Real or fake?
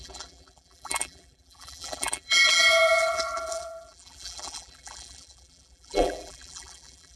fake